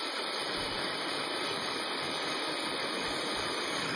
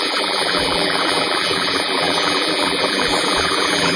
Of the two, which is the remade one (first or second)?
second